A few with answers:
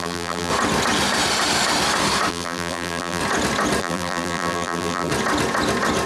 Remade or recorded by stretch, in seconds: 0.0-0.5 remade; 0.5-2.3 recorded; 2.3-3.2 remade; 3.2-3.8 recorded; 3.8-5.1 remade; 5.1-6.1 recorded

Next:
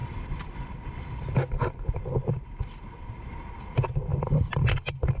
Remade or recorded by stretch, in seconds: 0.0-2.4 remade; 2.4-4.1 recorded; 4.1-5.2 remade

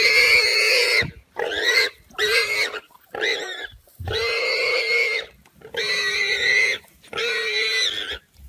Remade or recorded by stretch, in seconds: 0.0-3.3 recorded; 3.3-4.8 remade; 4.8-8.5 recorded

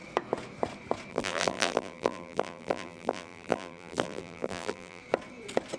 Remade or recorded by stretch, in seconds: 0.0-1.1 recorded; 1.1-5.0 remade; 5.0-5.8 recorded